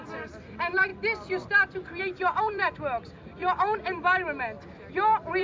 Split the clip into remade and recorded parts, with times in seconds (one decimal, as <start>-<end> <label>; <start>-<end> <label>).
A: 0.0-0.9 remade; 0.9-2.0 recorded; 2.0-3.4 remade; 3.4-5.4 recorded